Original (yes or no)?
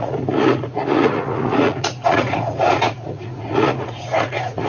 no